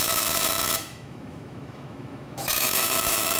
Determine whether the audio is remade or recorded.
remade